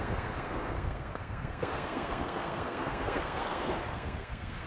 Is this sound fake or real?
fake